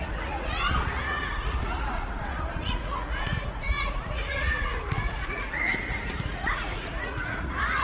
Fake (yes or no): yes